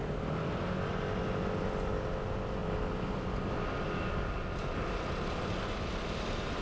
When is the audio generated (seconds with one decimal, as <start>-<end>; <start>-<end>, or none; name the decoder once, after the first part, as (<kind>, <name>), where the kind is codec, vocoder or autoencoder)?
none